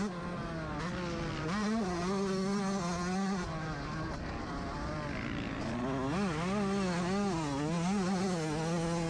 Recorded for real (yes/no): yes